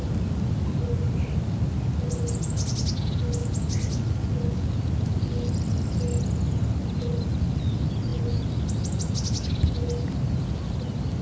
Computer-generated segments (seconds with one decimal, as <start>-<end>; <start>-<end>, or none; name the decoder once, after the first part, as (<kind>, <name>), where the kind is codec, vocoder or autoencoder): none